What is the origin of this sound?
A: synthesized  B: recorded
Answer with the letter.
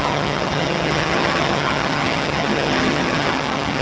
A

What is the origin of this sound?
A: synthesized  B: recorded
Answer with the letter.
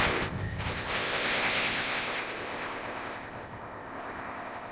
A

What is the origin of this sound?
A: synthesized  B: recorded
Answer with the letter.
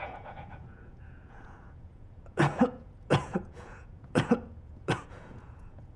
A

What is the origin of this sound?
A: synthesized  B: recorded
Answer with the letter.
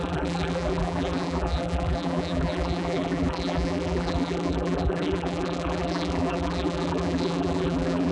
A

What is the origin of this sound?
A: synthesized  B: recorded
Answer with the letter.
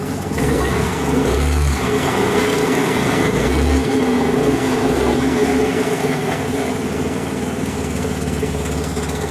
A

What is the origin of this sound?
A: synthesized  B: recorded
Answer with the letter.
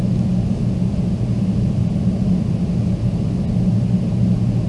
B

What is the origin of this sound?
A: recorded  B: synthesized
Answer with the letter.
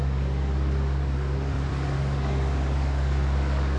B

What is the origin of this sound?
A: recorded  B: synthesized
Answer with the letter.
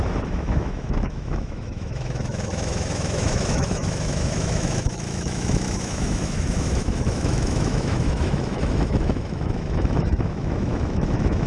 B